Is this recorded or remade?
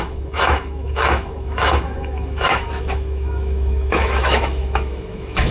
remade